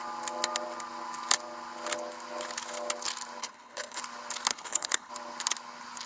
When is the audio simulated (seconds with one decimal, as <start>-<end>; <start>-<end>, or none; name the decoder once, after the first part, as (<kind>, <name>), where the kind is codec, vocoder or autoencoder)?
3.4-4.0 (codec, HILCodec); 4.5-5.1